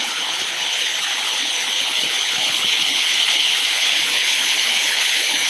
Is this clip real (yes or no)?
no